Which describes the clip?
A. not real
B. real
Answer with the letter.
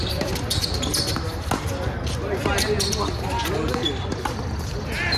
B